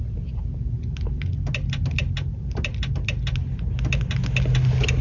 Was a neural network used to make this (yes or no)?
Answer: no